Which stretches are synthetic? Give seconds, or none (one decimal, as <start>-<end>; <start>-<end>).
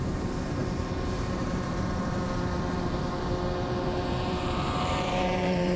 0.0-5.8